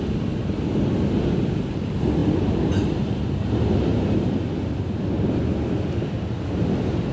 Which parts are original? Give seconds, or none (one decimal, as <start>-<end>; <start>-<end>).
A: 0.0-7.1